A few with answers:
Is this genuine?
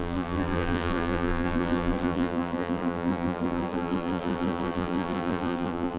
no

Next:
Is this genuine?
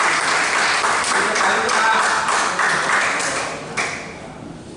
yes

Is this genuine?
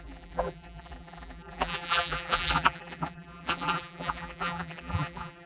no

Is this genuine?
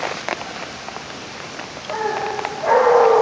yes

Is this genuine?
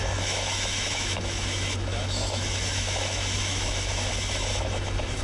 no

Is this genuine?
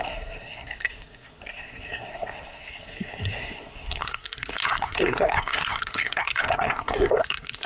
no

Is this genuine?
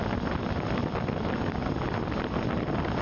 yes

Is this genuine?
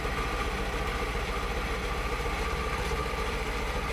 yes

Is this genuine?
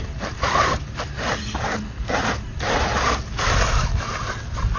yes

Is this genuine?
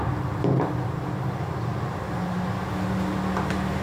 yes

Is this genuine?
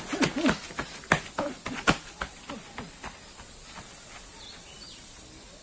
yes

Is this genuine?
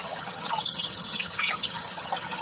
no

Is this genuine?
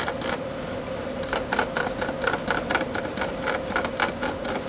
yes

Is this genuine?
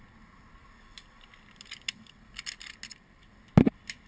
yes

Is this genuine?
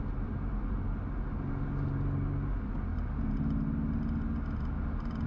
yes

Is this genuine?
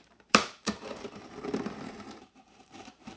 no